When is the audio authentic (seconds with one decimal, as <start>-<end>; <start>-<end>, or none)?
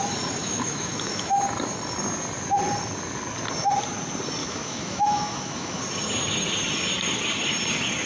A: 0.0-0.4; 1.4-4.4; 5.8-8.1